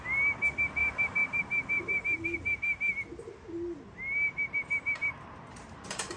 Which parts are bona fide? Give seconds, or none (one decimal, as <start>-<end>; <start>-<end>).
0.0-0.8; 1.4-5.0